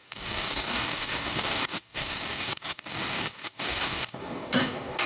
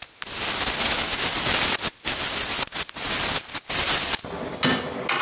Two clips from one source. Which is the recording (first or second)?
second